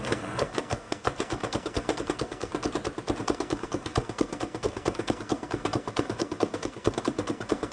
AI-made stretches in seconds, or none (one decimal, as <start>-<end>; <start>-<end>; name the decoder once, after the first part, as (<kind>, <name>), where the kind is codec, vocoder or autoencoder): 0.0-2.5 (codec, SNAC); 3.2-7.7